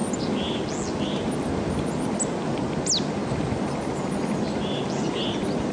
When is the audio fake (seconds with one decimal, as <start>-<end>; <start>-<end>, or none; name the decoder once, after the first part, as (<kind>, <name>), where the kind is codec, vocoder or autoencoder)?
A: none